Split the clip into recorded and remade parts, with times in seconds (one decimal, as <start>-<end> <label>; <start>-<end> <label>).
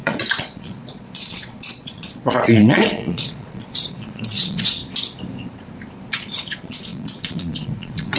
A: 0.0-4.8 remade; 4.8-6.1 recorded; 6.1-8.2 remade